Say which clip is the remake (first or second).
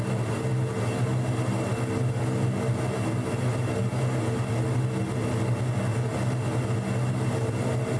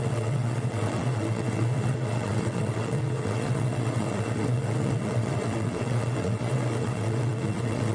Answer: second